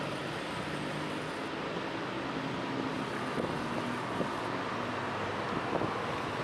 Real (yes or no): yes